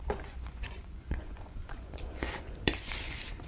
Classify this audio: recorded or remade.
remade